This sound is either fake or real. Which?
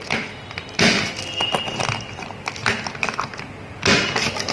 real